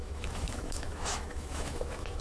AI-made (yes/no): yes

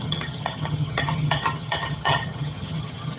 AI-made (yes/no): yes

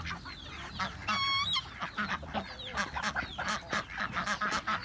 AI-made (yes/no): no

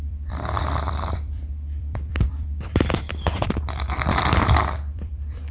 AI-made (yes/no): yes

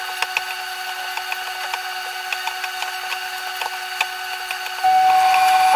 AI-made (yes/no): no